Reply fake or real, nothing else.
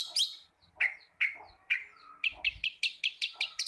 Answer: real